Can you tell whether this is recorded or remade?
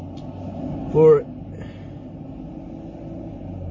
recorded